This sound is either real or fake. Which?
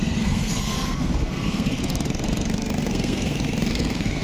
fake